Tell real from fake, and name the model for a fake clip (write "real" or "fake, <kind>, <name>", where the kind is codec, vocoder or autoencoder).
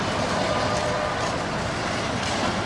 real